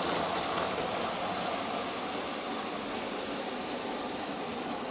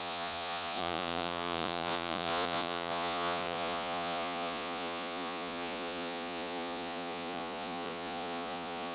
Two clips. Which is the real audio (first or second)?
first